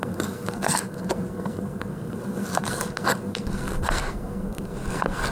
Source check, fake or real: fake